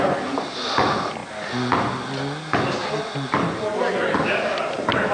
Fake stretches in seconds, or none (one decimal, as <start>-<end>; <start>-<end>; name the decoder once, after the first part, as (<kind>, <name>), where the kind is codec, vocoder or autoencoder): none